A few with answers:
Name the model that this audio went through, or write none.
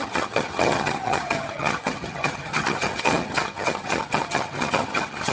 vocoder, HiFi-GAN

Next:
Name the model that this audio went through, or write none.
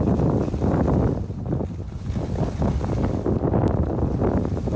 none